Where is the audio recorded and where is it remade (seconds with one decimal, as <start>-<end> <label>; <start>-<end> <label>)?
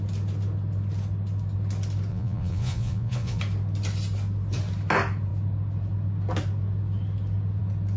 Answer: 0.0-2.1 recorded; 2.1-3.4 remade; 3.4-8.0 recorded